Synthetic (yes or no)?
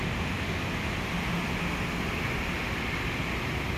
no